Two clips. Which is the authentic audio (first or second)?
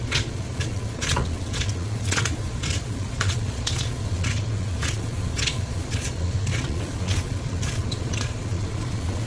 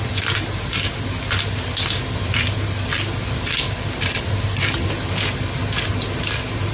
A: second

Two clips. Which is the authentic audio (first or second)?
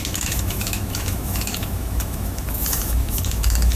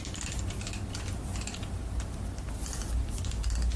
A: second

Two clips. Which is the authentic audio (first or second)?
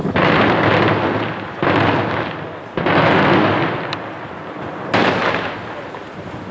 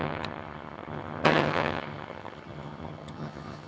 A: first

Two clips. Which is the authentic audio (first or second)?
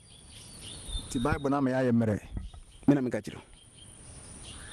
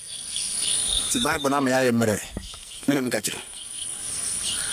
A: first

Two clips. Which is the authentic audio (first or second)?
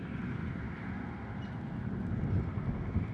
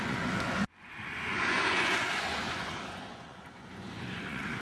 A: first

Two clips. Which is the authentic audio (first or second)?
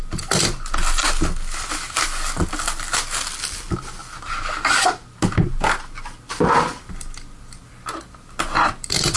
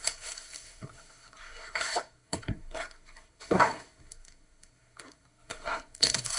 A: first